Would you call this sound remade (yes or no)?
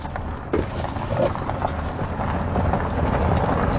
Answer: no